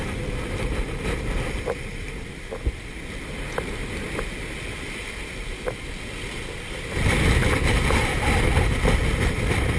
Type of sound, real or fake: real